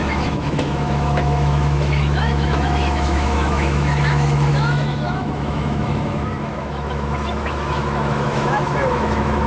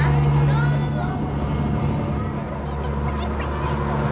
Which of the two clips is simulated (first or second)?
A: first